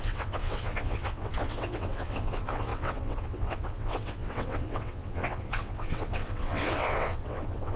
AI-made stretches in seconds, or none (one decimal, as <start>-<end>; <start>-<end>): 0.0-7.8